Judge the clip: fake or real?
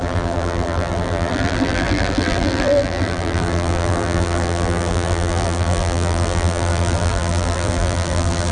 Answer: fake